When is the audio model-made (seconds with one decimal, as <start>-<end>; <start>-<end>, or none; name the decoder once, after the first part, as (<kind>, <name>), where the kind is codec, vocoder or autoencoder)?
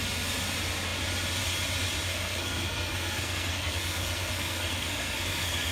2.1-5.7 (codec, SNAC)